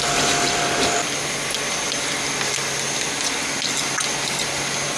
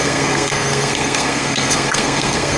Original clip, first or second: first